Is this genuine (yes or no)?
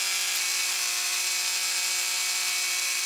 yes